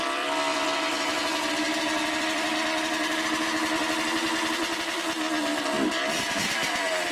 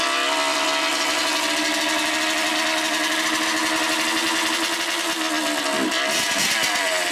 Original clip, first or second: second